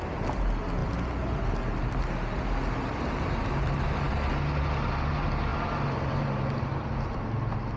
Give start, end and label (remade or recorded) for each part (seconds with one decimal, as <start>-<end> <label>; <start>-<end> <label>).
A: 0.0-7.8 recorded